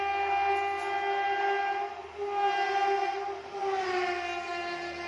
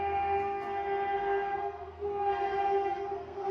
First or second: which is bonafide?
first